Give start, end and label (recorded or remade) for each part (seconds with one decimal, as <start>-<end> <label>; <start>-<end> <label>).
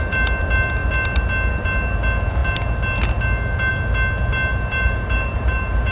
0.0-4.5 recorded; 4.5-5.9 remade